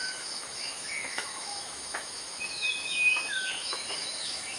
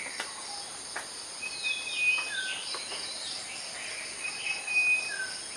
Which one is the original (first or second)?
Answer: second